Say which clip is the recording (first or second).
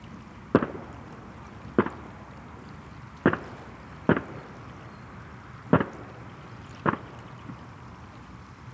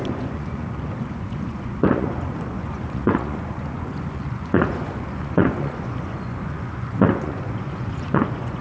first